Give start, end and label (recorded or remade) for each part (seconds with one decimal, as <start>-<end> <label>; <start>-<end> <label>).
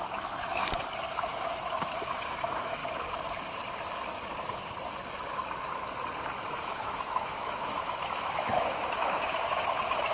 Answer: 0.0-0.6 remade; 0.6-1.1 recorded; 1.1-2.8 remade; 2.8-6.6 recorded; 6.6-10.1 remade